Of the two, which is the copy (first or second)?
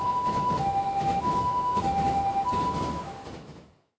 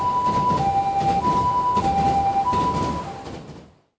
first